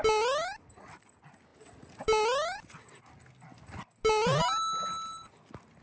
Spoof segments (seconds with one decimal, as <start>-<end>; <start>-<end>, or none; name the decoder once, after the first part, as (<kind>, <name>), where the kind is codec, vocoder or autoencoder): none